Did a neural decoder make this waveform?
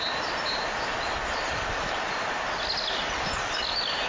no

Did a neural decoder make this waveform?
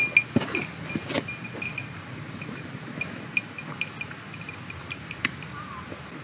no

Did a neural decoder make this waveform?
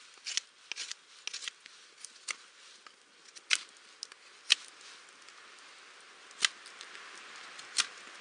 no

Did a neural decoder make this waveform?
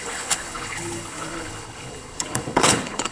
yes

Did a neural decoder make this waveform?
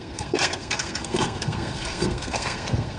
yes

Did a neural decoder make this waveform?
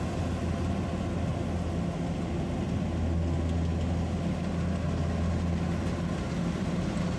no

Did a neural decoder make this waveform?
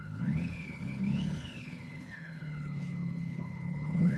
yes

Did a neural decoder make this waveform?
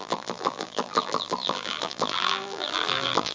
yes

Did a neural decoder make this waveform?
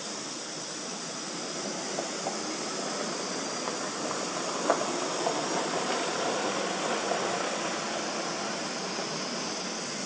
no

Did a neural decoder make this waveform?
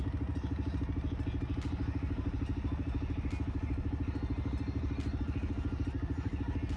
no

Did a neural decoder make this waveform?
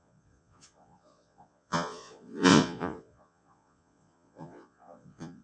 yes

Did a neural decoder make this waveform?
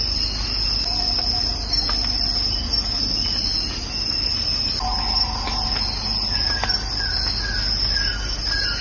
no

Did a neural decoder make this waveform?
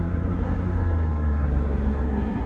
yes